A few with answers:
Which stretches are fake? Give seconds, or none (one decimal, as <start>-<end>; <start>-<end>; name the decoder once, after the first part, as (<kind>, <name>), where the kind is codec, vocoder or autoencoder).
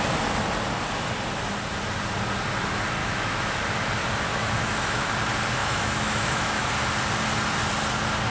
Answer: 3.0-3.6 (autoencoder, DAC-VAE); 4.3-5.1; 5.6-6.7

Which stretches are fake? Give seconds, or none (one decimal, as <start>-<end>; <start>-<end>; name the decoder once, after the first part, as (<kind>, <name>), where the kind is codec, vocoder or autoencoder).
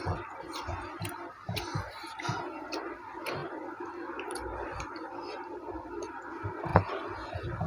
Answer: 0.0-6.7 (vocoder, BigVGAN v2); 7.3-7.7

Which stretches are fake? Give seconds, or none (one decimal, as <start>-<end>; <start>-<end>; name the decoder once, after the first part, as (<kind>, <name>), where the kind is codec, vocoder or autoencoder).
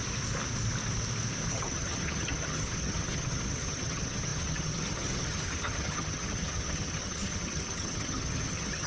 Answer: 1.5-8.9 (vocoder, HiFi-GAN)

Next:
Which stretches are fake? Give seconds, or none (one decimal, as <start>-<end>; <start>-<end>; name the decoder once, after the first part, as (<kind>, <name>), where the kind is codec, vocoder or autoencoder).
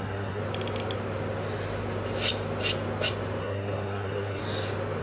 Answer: 0.0-0.4 (codec, SNAC); 3.4-4.4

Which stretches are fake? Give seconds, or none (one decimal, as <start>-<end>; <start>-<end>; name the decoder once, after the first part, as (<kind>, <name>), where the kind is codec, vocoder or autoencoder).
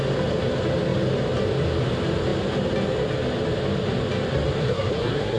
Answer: 4.6-5.4 (codec, SNAC)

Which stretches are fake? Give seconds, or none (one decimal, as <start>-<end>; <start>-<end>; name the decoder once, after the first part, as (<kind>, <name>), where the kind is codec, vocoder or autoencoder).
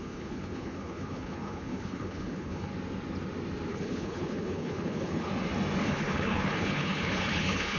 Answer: 0.0-2.7 (codec, HILCodec); 3.7-5.3; 5.8-7.8